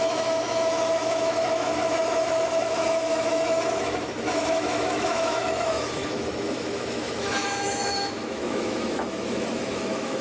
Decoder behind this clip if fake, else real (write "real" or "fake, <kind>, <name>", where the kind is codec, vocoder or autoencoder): fake, autoencoder, DAC-VAE